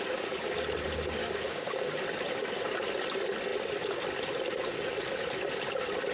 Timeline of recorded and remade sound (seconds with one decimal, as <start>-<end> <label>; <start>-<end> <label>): 0.0-1.2 recorded; 1.2-2.0 remade; 2.0-6.1 recorded